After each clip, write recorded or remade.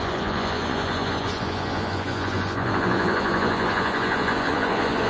remade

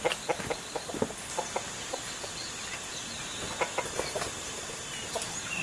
recorded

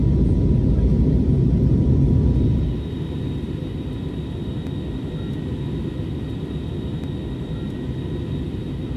recorded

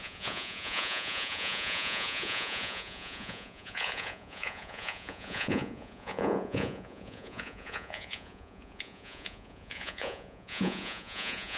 remade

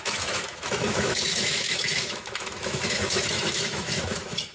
remade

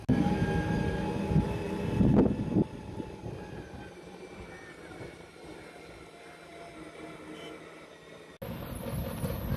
recorded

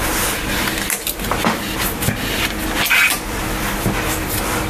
recorded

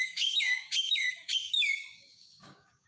remade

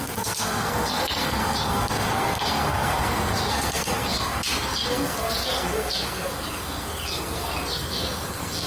remade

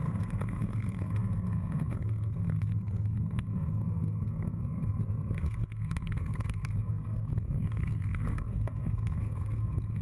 remade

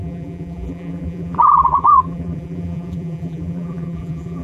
remade